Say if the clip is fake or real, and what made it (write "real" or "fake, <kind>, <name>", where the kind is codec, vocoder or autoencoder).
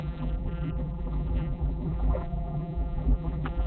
fake, vocoder, BigVGAN v2